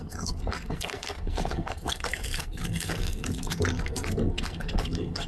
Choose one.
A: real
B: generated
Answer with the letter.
B